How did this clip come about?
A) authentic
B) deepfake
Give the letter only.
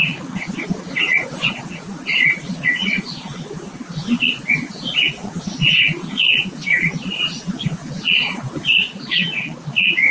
B